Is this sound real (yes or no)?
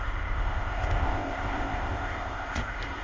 no